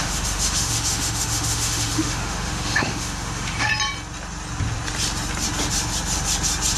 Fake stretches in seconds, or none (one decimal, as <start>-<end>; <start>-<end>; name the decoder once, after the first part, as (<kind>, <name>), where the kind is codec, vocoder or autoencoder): 0.0-3.7 (autoencoder, DAC-VAE)